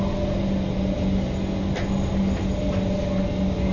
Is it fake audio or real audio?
real